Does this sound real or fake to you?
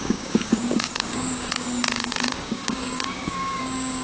fake